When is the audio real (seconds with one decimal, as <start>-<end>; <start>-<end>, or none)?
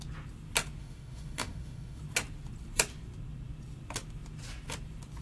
0.0-0.8; 2.0-5.2